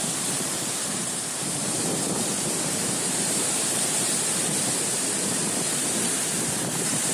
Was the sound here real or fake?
fake